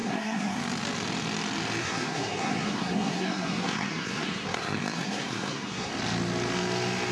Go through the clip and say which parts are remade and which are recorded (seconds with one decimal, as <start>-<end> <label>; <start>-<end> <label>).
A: 0.0-0.6 remade; 0.6-1.8 recorded; 1.8-5.9 remade; 5.9-7.1 recorded